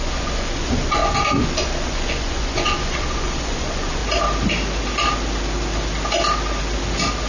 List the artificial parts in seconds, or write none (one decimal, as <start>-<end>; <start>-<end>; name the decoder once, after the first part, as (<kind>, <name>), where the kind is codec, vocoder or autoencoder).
0.0-4.0 (vocoder, Vocos)